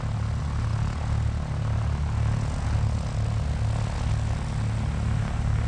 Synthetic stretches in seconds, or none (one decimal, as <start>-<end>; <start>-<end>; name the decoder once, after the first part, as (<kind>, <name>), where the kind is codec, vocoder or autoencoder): none